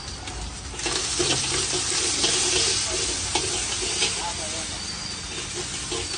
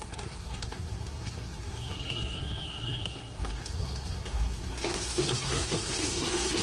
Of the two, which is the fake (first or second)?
second